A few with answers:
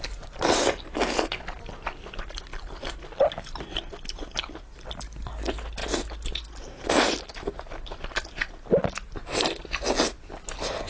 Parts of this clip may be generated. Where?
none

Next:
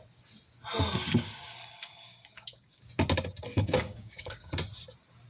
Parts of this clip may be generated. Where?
1.2-2.8 (codec, DAC); 3.5-4.5